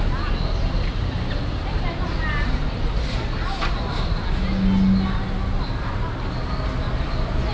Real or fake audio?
real